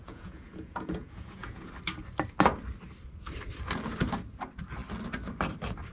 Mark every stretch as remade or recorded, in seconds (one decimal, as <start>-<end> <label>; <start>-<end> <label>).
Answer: 0.0-1.7 remade; 1.7-5.9 recorded